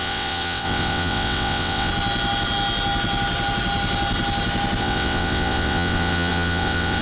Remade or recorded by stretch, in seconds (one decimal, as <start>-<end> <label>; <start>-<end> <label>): 0.0-1.9 remade; 1.9-4.8 recorded; 4.8-7.0 remade